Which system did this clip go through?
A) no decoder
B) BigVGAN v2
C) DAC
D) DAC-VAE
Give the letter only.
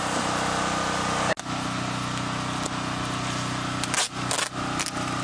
A